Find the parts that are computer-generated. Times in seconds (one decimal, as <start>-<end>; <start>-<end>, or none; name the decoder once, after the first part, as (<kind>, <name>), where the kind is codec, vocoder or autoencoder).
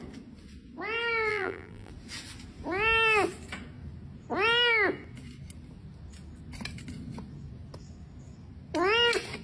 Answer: 1.3-1.9 (vocoder, BigVGAN v2)